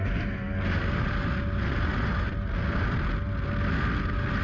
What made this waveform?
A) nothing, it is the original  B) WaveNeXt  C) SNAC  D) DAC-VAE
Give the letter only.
A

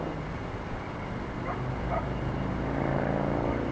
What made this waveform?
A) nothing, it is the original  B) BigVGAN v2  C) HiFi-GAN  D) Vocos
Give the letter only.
B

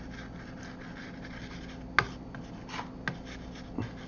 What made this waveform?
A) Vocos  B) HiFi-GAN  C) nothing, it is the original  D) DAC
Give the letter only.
C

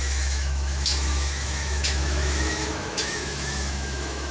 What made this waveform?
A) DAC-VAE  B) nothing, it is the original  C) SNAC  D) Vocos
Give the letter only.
A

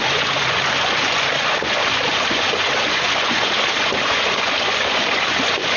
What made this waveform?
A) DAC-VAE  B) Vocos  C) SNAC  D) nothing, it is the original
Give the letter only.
B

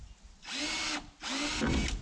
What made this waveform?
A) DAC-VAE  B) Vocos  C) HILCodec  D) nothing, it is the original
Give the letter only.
D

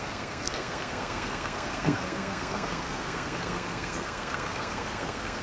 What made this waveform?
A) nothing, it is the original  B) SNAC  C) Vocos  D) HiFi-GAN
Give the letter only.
B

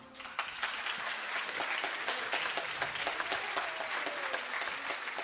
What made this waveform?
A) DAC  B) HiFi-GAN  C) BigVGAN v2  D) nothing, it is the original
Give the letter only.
D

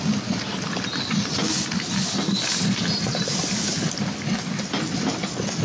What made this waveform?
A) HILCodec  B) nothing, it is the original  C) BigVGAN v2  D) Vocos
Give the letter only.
B